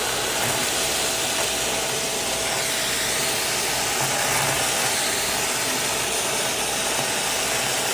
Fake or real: real